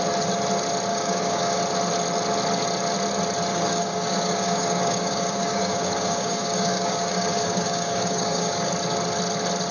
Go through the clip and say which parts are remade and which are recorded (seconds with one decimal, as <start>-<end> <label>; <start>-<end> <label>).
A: 0.0-0.9 recorded; 0.9-1.6 remade; 1.6-3.5 recorded; 3.5-8.7 remade; 8.7-9.7 recorded

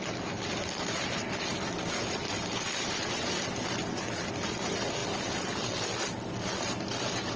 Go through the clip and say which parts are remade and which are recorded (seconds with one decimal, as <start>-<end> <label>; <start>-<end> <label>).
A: 0.0-7.4 recorded